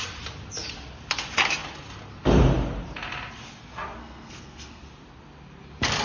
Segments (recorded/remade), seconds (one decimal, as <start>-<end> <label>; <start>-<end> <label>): 0.0-4.0 recorded; 4.0-4.8 remade; 4.8-6.0 recorded